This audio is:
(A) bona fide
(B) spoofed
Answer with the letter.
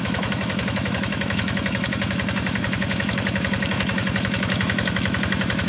B